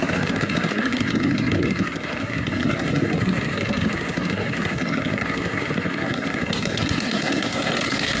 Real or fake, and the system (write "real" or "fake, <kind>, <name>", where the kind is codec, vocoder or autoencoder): fake, codec, SNAC